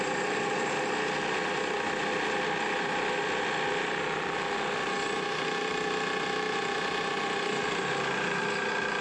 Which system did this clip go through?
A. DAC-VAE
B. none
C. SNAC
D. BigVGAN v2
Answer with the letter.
B